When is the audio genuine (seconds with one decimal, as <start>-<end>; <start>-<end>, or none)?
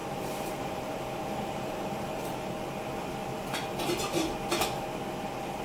2.5-5.6